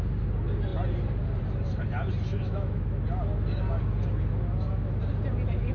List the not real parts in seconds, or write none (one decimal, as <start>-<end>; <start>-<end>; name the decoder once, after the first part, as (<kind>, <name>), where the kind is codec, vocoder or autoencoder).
2.3-2.8 (autoencoder, DAC-VAE)